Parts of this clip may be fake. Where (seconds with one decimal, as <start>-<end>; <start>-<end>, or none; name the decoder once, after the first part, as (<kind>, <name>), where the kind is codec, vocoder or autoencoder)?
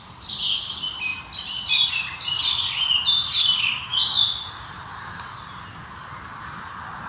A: 0.0-1.1 (vocoder, BigVGAN v2); 1.9-7.1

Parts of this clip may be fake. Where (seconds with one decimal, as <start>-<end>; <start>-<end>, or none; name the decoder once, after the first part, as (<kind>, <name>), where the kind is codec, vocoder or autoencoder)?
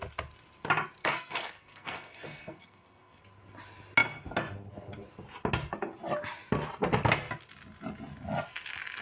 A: 1.0-3.2 (codec, SNAC)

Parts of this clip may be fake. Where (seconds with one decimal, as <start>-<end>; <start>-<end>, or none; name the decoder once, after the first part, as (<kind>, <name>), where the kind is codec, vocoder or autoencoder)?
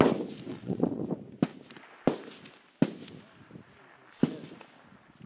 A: 0.5-1.0 (vocoder, Vocos)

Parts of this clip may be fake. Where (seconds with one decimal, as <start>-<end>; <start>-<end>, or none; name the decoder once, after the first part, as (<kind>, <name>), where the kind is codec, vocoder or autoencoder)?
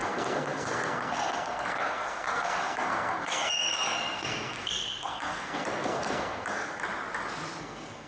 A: 0.0-6.8 (codec, SNAC); 7.6-8.1